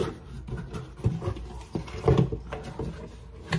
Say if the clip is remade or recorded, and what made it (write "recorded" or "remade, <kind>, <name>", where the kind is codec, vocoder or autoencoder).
recorded